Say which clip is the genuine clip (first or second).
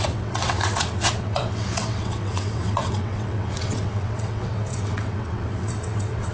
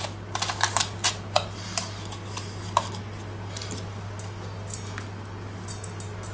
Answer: second